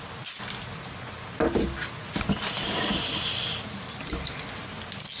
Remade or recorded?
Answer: recorded